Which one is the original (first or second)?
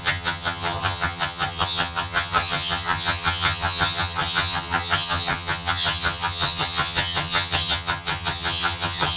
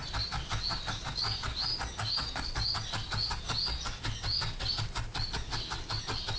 second